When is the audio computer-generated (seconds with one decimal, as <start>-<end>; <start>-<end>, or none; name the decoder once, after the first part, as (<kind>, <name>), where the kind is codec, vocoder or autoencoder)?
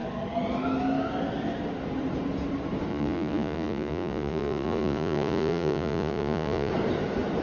2.9-6.7 (vocoder, Vocos)